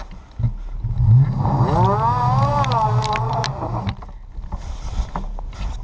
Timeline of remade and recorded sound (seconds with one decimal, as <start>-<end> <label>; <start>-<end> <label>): 0.0-5.8 recorded